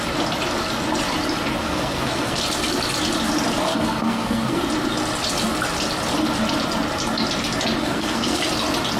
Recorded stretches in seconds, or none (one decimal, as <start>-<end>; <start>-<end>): 0.0-1.6; 2.4-3.7; 4.6-7.8; 8.4-9.0